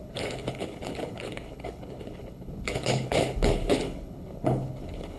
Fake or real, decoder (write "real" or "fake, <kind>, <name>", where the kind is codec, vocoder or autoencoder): fake, codec, HILCodec